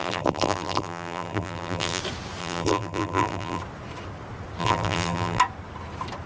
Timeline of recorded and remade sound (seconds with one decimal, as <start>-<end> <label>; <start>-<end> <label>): 0.0-2.0 remade; 2.0-2.4 recorded; 2.4-3.6 remade; 3.6-4.6 recorded; 4.6-5.4 remade; 5.4-6.3 recorded